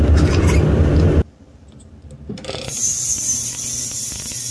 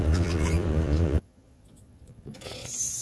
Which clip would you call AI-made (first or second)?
second